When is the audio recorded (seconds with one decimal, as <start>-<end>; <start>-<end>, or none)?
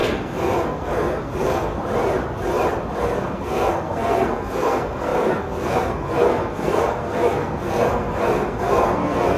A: 1.8-3.0